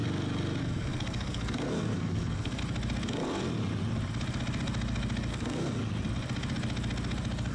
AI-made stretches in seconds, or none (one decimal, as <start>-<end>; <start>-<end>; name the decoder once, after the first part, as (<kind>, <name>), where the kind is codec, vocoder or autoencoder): 0.6-2.6 (codec, SNAC); 5.3-5.8